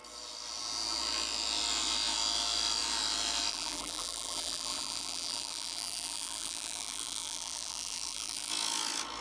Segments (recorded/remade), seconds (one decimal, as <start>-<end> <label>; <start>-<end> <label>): 0.0-3.5 recorded; 3.5-8.5 remade; 8.5-9.2 recorded